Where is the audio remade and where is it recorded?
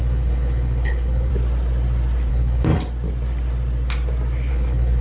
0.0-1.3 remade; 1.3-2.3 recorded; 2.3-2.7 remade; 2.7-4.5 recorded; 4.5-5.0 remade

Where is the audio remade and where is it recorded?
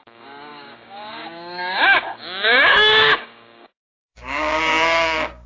0.0-5.5 remade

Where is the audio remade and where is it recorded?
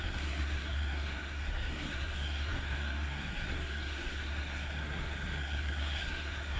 0.0-6.6 remade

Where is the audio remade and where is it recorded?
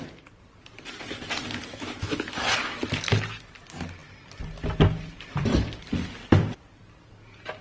0.0-1.7 recorded; 1.7-2.5 remade; 2.5-7.6 recorded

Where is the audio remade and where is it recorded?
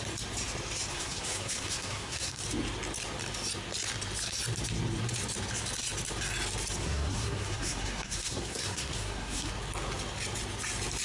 0.0-0.9 recorded; 0.9-2.4 remade; 2.4-6.8 recorded; 6.8-9.5 remade; 9.5-11.0 recorded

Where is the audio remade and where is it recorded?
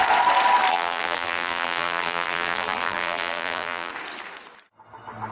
0.0-0.7 recorded; 0.7-3.9 remade; 3.9-5.3 recorded